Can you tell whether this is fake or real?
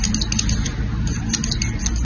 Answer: real